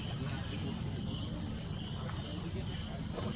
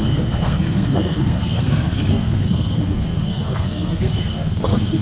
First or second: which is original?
first